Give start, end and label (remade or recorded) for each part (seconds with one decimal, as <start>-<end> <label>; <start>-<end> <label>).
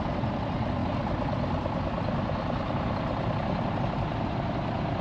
0.0-0.8 remade; 0.8-3.8 recorded; 3.8-5.0 remade